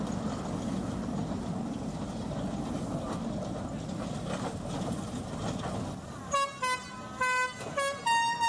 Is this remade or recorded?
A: recorded